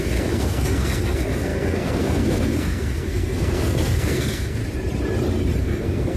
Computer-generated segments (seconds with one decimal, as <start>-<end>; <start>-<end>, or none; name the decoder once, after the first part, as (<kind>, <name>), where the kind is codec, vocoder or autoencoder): 0.0-4.6 (codec, SNAC); 5.6-6.2